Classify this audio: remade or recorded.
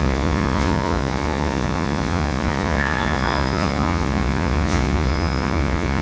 remade